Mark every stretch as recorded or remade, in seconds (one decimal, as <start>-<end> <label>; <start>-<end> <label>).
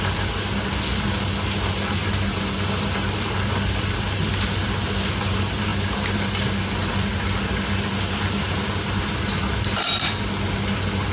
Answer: 0.0-11.1 recorded